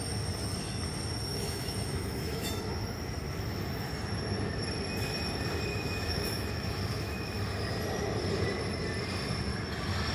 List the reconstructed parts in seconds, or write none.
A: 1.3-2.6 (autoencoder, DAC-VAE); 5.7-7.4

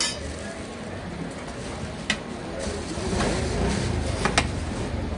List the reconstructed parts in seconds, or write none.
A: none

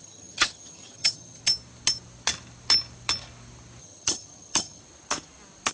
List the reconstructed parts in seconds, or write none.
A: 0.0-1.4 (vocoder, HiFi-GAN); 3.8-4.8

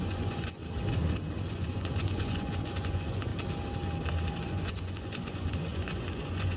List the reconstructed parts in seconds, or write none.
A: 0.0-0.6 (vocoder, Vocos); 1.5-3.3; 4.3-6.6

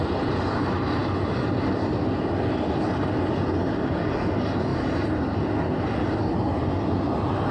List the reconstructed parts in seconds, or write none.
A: none

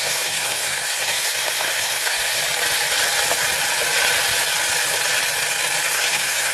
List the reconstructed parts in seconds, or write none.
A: 0.0-2.4 (codec, SNAC); 5.9-6.5

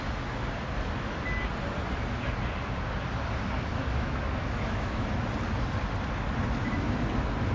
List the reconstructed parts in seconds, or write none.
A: 3.7-5.1 (autoencoder, DAC-VAE)

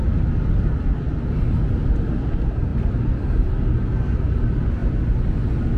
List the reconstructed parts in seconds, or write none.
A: 2.7-3.7 (vocoder, BigVGAN v2)